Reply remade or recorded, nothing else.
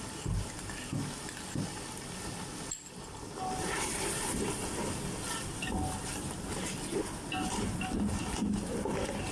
recorded